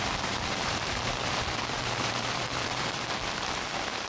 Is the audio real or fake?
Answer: fake